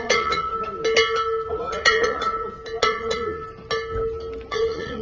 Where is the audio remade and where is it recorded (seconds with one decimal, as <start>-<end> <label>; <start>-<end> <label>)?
0.0-0.5 remade; 0.5-1.5 recorded; 1.5-2.3 remade; 2.3-2.8 recorded; 2.8-3.4 remade; 3.4-4.5 recorded; 4.5-5.0 remade